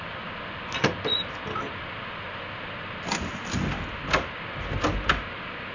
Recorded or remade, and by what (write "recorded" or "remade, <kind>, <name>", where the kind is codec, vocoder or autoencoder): recorded